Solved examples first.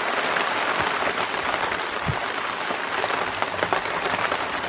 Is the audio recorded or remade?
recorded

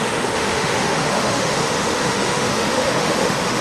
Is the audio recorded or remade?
remade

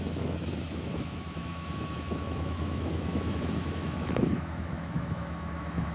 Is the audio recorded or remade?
remade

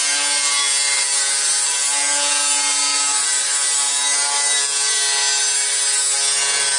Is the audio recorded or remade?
recorded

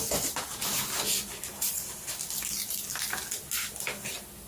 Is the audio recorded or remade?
recorded